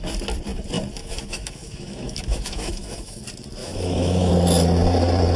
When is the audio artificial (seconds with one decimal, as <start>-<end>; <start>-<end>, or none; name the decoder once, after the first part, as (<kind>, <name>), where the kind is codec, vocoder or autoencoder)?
1.0-3.2 (autoencoder, DAC-VAE); 3.6-4.3